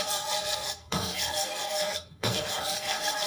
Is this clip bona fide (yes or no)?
no